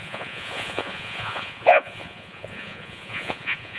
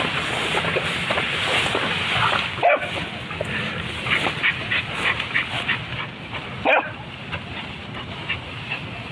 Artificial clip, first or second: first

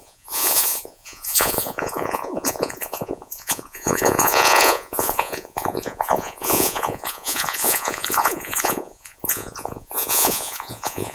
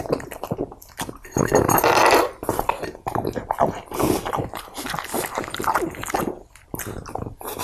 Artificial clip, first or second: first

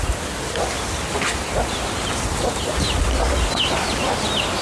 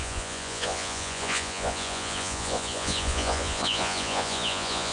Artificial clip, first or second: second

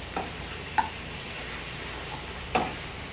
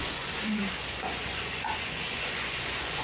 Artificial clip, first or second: second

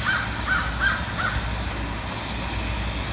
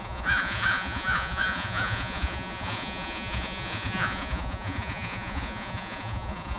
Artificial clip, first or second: second